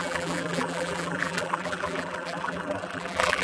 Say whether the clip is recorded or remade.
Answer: remade